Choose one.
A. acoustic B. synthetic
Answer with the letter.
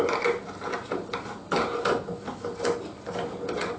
A